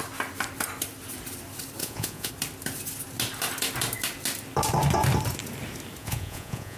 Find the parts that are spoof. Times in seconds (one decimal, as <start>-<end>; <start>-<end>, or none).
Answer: 1.8-2.3; 6.0-6.8